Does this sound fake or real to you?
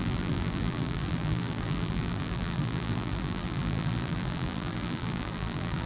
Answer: fake